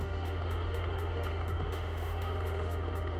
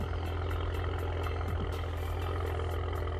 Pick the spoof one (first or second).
first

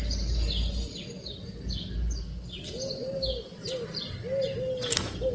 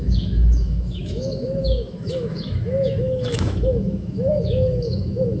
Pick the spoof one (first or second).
second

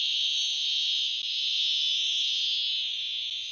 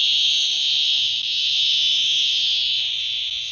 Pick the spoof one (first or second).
second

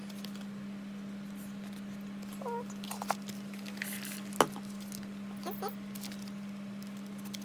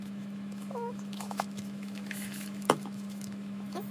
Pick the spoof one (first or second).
second